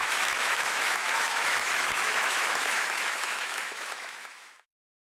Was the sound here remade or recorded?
remade